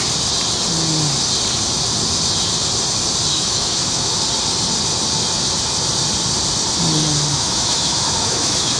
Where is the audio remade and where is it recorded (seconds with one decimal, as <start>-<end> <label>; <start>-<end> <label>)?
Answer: 0.0-3.3 recorded; 3.3-4.2 remade; 4.2-7.3 recorded; 7.3-8.8 remade

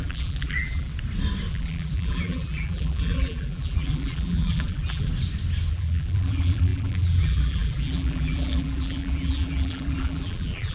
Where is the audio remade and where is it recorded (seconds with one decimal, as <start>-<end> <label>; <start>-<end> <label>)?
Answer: 0.0-0.9 remade; 0.9-1.5 recorded; 1.5-5.1 remade; 5.1-5.7 recorded; 5.7-10.7 remade

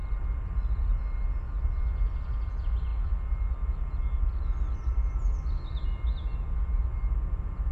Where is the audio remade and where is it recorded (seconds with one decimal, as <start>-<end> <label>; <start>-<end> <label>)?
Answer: 0.0-7.7 recorded